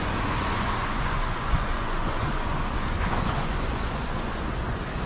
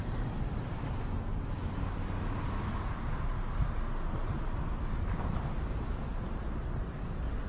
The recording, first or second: second